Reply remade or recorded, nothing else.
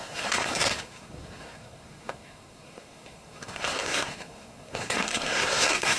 remade